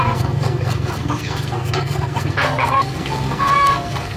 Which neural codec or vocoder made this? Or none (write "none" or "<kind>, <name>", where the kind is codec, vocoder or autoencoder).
codec, SNAC